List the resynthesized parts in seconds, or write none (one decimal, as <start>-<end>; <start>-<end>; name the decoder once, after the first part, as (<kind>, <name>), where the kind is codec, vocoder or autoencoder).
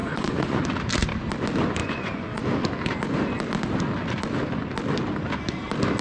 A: 0.0-0.6 (vocoder, Vocos); 1.8-2.4